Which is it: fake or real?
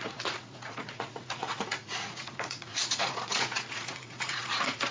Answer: fake